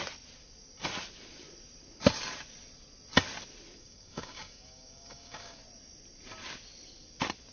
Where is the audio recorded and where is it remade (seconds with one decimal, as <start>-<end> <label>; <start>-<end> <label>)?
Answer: 0.0-3.8 recorded; 3.8-5.6 remade; 5.6-7.5 recorded